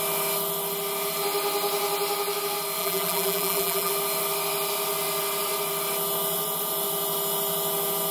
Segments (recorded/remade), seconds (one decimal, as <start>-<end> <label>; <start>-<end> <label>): 0.0-2.8 recorded; 2.8-3.9 remade; 3.9-8.1 recorded